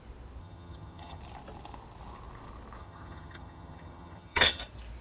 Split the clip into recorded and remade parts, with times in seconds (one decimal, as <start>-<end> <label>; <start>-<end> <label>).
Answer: 0.0-0.4 recorded; 0.4-1.2 remade; 1.2-2.8 recorded; 2.8-4.6 remade; 4.6-5.0 recorded